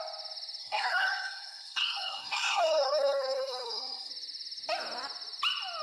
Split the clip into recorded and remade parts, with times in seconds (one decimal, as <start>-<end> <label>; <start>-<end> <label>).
0.0-0.6 recorded; 0.6-4.1 remade; 4.1-5.8 recorded